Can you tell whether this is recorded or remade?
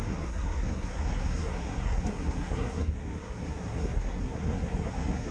remade